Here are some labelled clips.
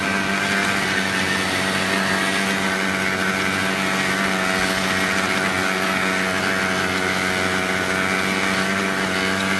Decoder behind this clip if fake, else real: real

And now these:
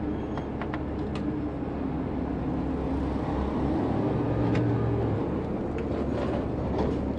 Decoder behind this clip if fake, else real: real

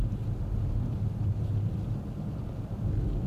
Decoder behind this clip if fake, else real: real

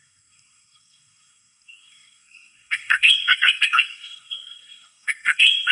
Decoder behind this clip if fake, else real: fake, codec, SNAC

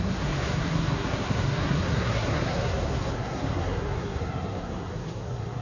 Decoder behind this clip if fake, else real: fake, codec, SNAC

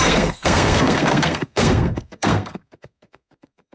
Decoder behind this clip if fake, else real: fake, codec, SNAC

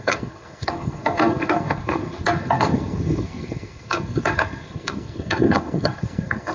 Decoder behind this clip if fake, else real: fake, codec, SNAC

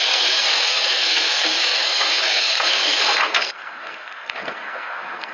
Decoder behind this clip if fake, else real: fake, codec, SNAC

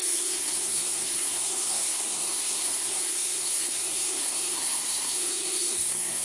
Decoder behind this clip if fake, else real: fake, codec, SNAC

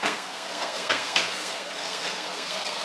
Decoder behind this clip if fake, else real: fake, codec, SNAC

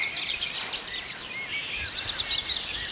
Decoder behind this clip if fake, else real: real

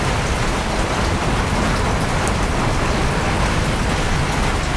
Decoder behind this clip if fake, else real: real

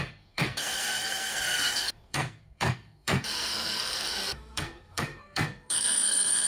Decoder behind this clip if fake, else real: fake, codec, SNAC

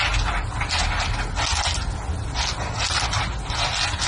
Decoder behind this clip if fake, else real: real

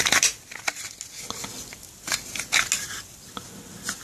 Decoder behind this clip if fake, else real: real